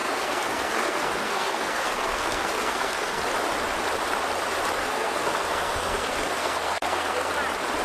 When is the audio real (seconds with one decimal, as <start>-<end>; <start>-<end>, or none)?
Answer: 3.2-4.8; 7.3-7.8